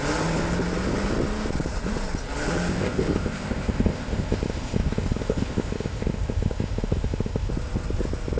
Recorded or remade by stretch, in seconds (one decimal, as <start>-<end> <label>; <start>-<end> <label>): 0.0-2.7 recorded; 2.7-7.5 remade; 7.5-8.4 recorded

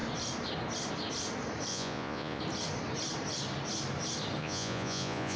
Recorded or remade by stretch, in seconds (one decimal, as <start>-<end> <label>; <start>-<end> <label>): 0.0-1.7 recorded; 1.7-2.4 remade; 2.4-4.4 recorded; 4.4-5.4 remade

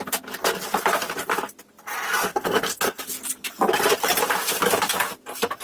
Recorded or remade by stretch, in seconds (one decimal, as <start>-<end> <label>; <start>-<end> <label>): 0.0-2.3 recorded; 2.3-3.0 remade; 3.0-5.6 recorded

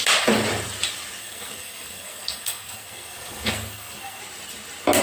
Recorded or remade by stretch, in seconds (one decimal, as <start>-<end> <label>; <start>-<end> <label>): 0.0-1.2 recorded; 1.2-4.2 remade; 4.2-5.0 recorded

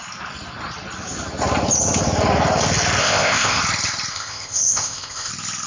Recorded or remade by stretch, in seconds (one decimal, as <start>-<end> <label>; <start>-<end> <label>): 0.0-3.0 recorded; 3.0-3.6 remade; 3.6-4.1 recorded; 4.1-5.3 remade; 5.3-5.7 recorded